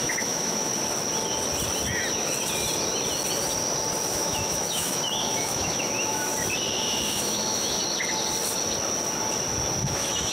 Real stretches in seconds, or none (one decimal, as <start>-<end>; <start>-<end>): 0.7-4.1; 6.3-6.8; 7.8-9.9